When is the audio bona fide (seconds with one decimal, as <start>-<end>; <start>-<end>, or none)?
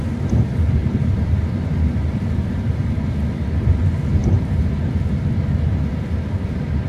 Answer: 0.0-0.8; 2.6-4.2; 5.9-6.9